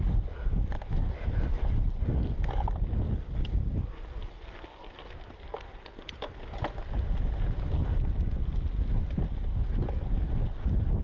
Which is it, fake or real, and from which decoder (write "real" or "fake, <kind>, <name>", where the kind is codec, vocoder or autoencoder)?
real